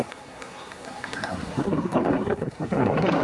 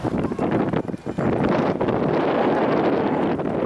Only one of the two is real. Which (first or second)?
second